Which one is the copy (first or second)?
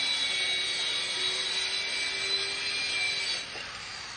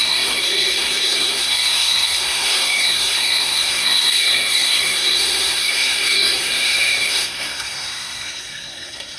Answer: second